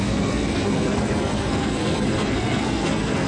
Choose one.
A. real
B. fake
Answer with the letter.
B